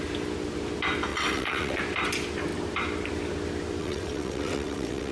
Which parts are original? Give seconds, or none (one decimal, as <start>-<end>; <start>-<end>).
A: 0.0-1.1; 1.8-3.8